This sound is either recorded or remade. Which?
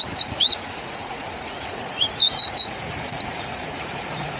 remade